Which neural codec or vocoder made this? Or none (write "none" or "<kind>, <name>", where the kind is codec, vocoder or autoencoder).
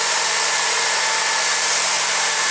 vocoder, BigVGAN v2